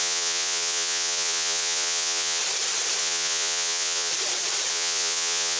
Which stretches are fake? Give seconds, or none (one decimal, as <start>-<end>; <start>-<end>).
0.0-2.4; 3.0-4.1; 4.7-5.6